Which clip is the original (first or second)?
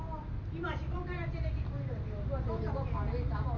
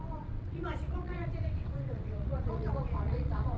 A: first